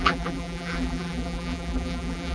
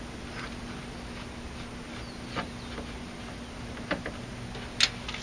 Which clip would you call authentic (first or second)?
second